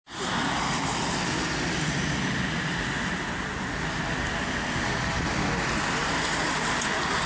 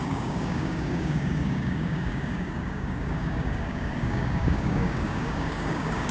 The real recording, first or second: first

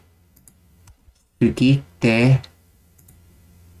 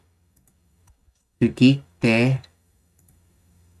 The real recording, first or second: first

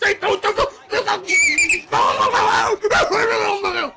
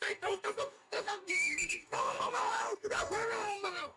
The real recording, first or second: first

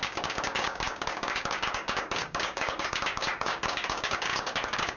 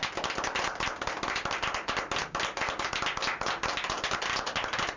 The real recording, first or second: second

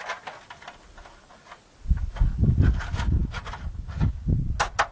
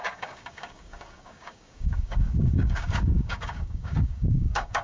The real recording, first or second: first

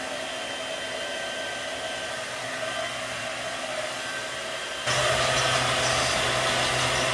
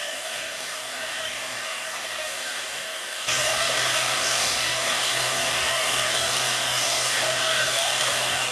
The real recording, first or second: first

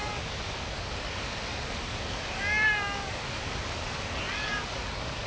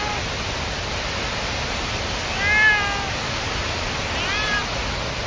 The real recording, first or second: second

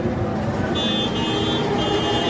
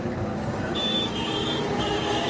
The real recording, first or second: first